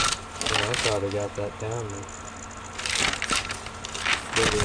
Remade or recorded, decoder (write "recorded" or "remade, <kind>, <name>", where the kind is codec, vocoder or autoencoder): recorded